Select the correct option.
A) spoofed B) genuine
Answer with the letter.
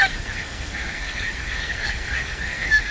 A